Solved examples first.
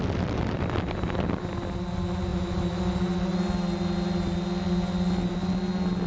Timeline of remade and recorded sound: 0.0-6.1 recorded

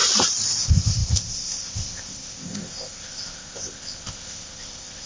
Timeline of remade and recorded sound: 0.0-0.6 recorded; 0.6-5.1 remade

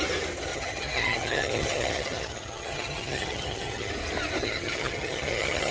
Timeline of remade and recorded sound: 0.0-0.5 recorded; 0.5-3.9 remade; 3.9-4.4 recorded; 4.4-5.7 remade

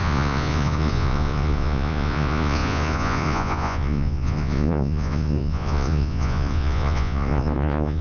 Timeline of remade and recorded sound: 0.0-8.0 remade

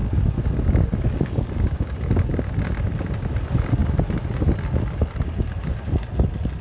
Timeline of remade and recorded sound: 0.0-6.6 recorded

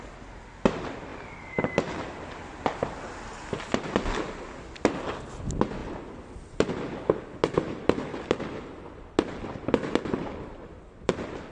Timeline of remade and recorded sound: 0.0-5.8 recorded; 5.8-6.7 remade; 6.7-11.5 recorded

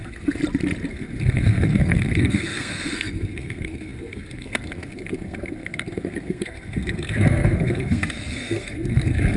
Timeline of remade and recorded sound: 0.0-0.4 remade; 0.4-0.9 recorded; 0.9-9.4 remade